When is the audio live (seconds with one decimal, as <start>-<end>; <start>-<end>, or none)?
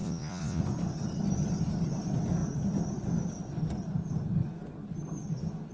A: 0.6-5.7